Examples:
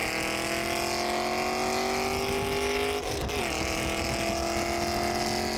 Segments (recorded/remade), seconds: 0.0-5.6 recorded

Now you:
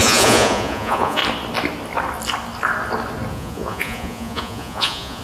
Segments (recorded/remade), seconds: 0.0-1.2 remade; 1.2-3.3 recorded; 3.3-5.2 remade

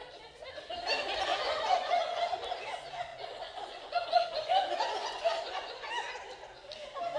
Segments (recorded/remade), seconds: 0.0-1.3 recorded; 1.3-2.2 remade; 2.2-3.1 recorded; 3.1-5.9 remade; 5.9-7.2 recorded

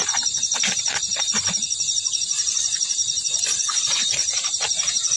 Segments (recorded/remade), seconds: 0.0-4.2 remade; 4.2-5.2 recorded

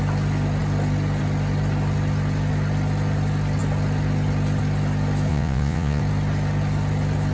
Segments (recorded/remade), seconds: 0.0-5.3 recorded; 5.3-6.0 remade; 6.0-7.3 recorded

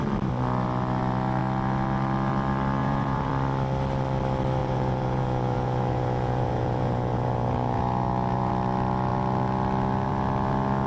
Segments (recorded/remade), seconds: 0.0-2.8 recorded; 2.8-3.3 remade; 3.3-4.6 recorded; 4.6-8.5 remade; 8.5-10.9 recorded

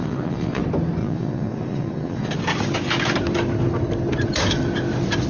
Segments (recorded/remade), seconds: 0.0-0.6 remade; 0.6-1.0 recorded; 1.0-2.3 remade; 2.3-5.3 recorded

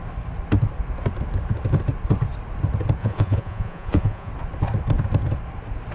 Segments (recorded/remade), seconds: 0.0-3.0 recorded; 3.0-4.3 remade; 4.3-5.9 recorded